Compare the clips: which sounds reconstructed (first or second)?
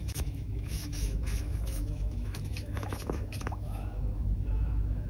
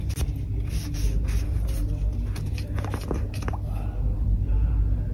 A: first